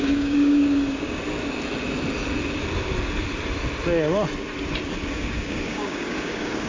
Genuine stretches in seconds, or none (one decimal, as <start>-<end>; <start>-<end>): 1.2-5.1